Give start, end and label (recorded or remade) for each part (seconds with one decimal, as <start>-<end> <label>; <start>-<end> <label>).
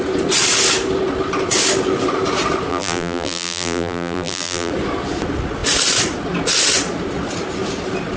0.0-2.7 recorded; 2.7-4.7 remade; 4.7-8.2 recorded